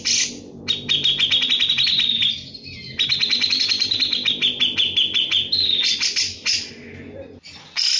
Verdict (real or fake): real